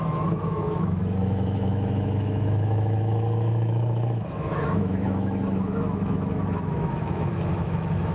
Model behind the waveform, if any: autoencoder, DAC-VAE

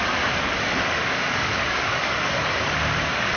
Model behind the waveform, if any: codec, DAC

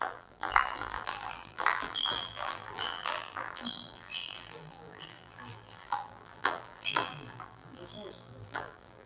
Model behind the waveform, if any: vocoder, BigVGAN v2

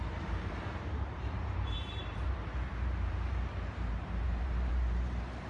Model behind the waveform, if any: vocoder, BigVGAN v2